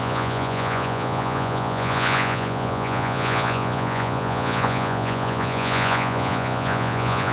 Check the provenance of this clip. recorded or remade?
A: remade